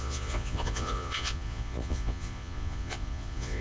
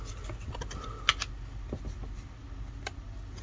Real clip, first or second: second